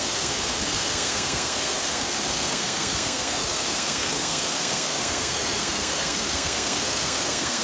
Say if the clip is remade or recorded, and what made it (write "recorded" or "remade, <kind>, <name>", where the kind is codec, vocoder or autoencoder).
remade, codec, SNAC